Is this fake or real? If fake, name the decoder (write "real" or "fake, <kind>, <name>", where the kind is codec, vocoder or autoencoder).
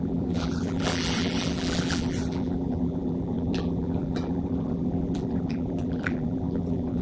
fake, vocoder, BigVGAN v2